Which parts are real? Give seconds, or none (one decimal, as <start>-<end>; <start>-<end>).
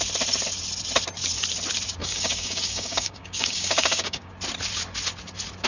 0.0-2.0; 4.3-5.7